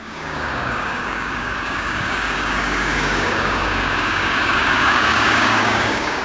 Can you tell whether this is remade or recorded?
remade